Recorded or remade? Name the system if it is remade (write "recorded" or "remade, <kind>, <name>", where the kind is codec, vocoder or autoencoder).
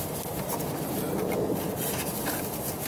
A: recorded